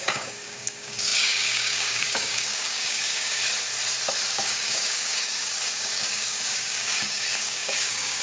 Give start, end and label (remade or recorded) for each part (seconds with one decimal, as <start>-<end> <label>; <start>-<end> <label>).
0.0-3.4 remade; 3.4-4.3 recorded; 4.3-8.2 remade